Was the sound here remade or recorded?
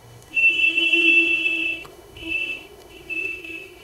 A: remade